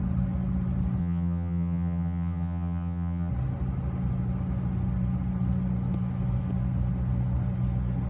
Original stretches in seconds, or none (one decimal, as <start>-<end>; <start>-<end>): 0.0-1.0; 3.3-8.1